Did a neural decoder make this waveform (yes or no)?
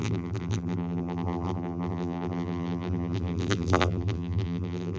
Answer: yes